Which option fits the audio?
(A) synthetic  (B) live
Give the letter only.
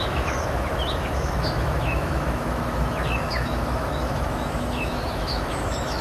A